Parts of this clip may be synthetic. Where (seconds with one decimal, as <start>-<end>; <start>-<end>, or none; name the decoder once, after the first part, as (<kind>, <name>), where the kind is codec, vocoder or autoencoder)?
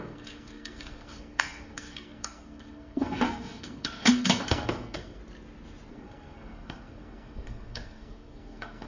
0.0-5.2 (codec, SNAC); 5.9-8.9